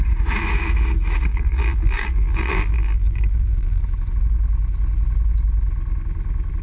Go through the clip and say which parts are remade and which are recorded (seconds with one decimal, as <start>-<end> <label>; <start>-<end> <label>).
0.0-1.3 recorded; 1.3-3.8 remade; 3.8-6.6 recorded